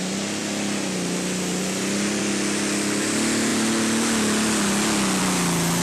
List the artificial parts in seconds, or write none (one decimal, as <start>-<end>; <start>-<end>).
none